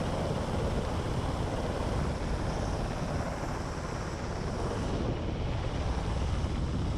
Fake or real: real